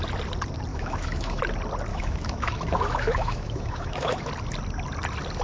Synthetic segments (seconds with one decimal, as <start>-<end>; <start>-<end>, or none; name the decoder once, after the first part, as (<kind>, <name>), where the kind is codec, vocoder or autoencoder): 0.7-1.4 (autoencoder, DAC-VAE); 1.9-4.3